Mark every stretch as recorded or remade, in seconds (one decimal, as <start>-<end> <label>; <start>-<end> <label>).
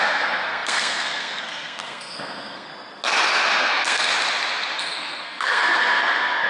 0.0-2.7 remade; 2.7-3.6 recorded; 3.6-4.1 remade; 4.1-4.8 recorded; 4.8-6.5 remade